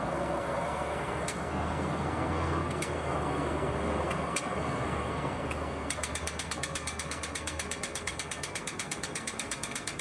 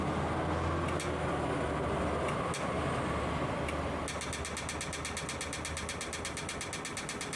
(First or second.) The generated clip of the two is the first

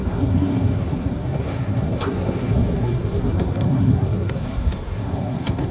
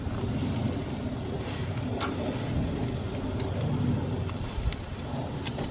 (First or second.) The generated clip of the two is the first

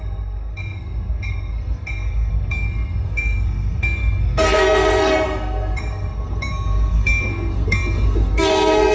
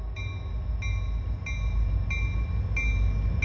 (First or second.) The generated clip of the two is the first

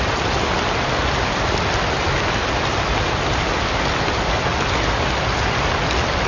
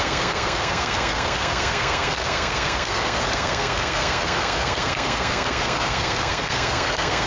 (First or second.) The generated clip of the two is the second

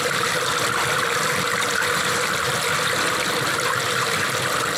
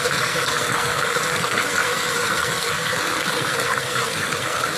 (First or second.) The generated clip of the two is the second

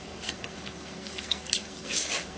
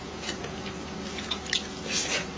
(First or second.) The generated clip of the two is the first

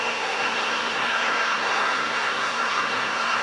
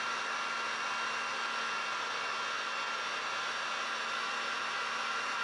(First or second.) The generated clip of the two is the first